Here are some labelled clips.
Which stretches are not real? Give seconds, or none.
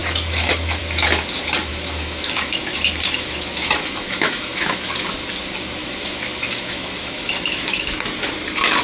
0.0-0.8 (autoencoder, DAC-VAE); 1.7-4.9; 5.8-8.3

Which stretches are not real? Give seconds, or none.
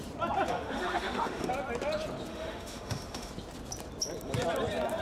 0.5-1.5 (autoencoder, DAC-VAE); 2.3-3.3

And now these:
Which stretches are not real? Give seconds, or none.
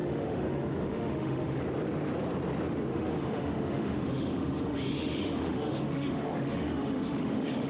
0.0-1.6 (autoencoder, DAC-VAE); 2.9-7.7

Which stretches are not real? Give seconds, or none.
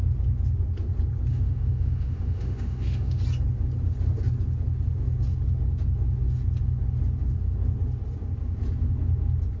1.3-3.2 (autoencoder, DAC-VAE)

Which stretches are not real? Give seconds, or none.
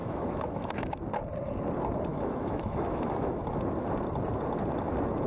0.0-1.0 (autoencoder, DAC-VAE); 2.1-3.4